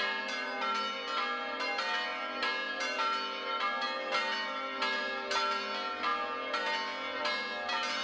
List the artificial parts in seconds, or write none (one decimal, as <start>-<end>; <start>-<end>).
none